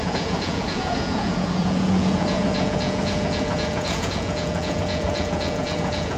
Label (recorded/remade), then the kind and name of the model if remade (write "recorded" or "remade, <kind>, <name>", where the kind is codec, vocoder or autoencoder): remade, vocoder, Vocos